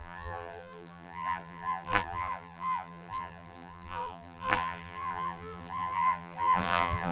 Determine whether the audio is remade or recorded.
remade